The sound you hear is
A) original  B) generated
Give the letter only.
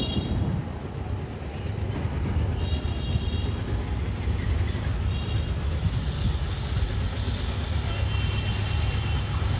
A